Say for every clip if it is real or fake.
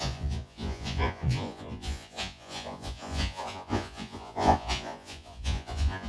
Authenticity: fake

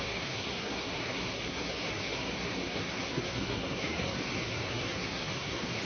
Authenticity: fake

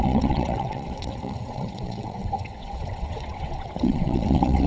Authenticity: fake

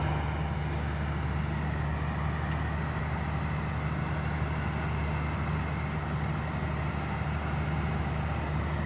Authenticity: real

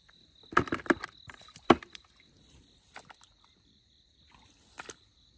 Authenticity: real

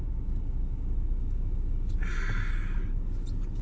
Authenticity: real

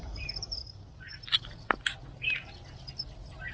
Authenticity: real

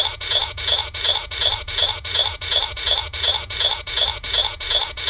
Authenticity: fake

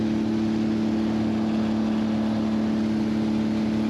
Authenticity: real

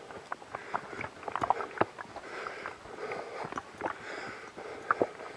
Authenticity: real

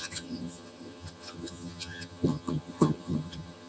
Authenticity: fake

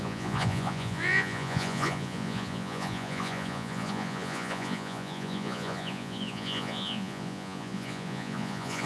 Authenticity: fake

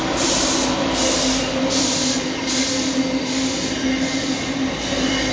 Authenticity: real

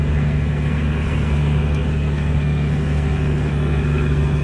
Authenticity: fake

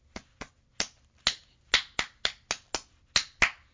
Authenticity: real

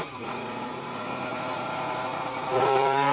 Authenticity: fake